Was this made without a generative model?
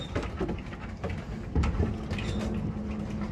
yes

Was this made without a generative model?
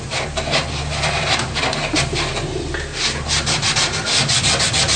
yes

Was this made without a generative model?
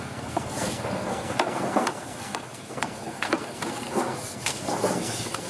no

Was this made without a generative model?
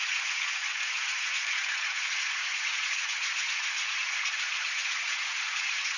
no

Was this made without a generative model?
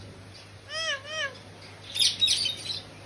yes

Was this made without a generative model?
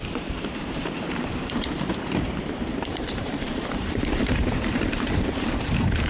no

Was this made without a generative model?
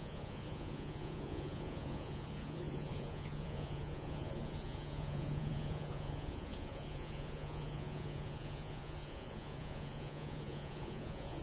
no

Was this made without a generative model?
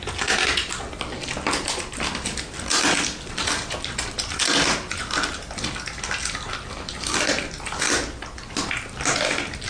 yes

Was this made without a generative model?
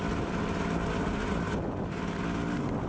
yes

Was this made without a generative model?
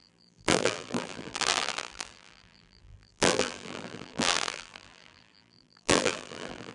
no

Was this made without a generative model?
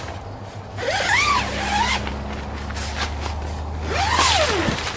yes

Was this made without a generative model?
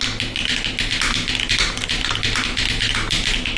yes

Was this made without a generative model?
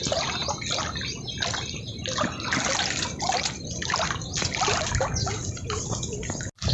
yes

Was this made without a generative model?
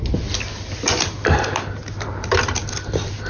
yes